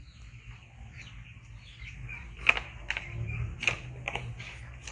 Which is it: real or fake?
real